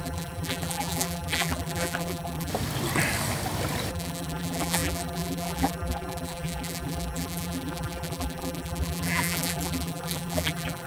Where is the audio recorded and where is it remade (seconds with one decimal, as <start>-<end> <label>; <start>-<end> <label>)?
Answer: 0.0-2.5 remade; 2.5-3.9 recorded; 3.9-10.9 remade